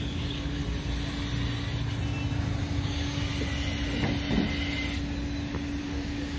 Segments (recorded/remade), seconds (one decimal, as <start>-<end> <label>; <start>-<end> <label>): 0.0-0.6 remade; 0.6-2.8 recorded; 2.8-3.3 remade; 3.3-5.8 recorded; 5.8-6.4 remade